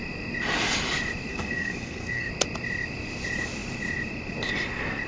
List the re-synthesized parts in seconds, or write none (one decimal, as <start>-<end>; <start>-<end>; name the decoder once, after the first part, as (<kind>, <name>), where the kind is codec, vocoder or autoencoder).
1.3-2.3 (codec, SNAC)